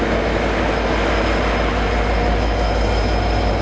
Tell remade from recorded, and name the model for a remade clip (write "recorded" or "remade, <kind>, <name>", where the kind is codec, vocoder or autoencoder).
recorded